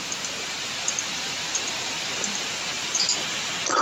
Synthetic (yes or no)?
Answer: yes